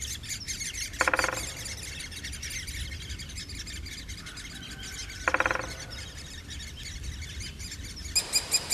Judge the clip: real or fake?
real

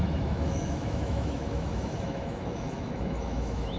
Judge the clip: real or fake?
fake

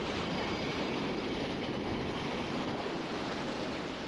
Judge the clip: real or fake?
real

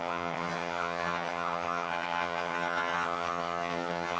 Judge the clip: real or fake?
fake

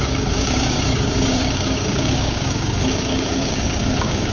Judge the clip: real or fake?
fake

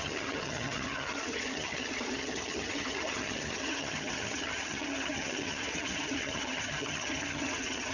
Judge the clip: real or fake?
fake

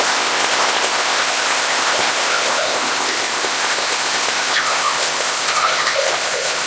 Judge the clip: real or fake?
fake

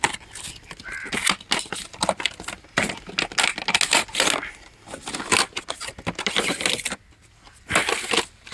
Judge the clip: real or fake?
real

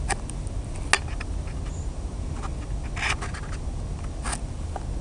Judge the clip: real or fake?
real